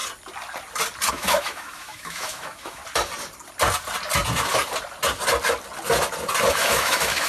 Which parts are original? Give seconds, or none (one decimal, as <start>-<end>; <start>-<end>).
0.0-1.1; 2.8-6.5